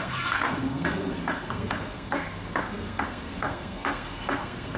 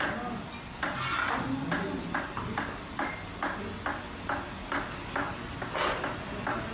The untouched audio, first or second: second